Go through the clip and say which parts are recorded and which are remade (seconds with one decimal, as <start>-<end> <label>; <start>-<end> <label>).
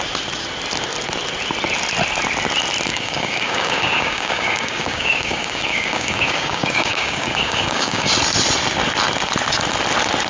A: 0.0-2.9 recorded; 2.9-8.1 remade; 8.1-10.3 recorded